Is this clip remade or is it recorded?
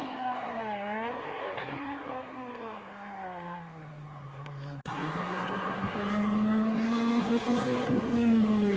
remade